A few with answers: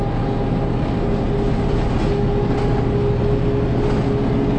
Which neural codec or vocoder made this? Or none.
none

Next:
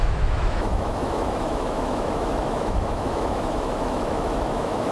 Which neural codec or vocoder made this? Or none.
autoencoder, DAC-VAE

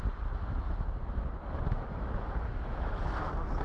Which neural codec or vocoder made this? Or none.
autoencoder, DAC-VAE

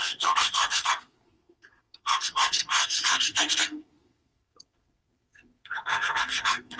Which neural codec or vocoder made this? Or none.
codec, SNAC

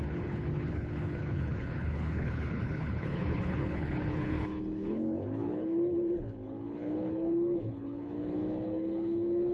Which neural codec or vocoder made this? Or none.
codec, HILCodec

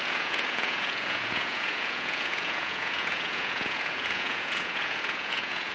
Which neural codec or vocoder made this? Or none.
vocoder, Vocos